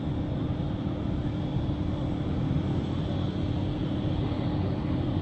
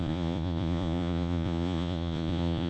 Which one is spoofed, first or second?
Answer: second